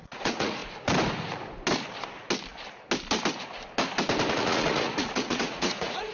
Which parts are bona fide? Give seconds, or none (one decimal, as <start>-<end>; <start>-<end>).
0.6-4.3